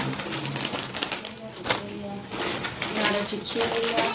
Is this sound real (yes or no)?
yes